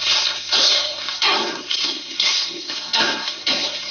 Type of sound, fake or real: fake